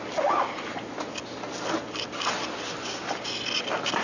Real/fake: real